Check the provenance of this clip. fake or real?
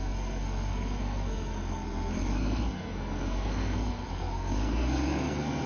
fake